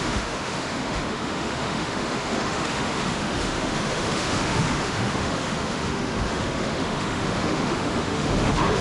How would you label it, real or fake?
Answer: fake